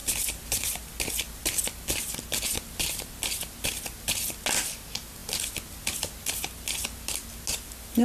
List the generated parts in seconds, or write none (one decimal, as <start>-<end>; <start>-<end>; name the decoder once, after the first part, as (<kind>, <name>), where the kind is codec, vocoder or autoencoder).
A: none